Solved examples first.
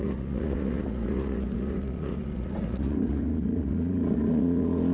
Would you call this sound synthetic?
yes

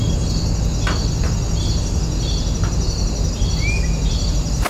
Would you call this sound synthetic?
no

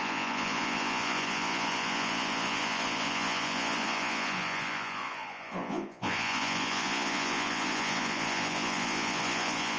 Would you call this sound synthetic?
yes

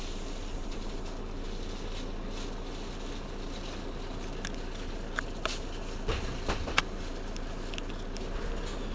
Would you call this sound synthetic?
no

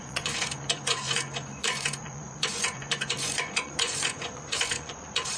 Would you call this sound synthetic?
yes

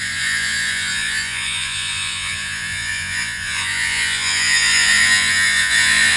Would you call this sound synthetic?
yes